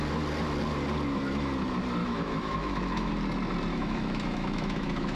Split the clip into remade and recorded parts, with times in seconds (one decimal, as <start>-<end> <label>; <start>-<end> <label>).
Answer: 0.0-2.0 recorded; 2.0-3.1 remade; 3.1-3.7 recorded; 3.7-5.2 remade